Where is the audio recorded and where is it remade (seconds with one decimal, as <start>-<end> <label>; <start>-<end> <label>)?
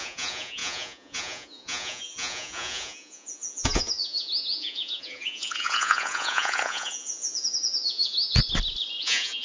0.0-8.4 remade; 8.4-9.0 recorded; 9.0-9.4 remade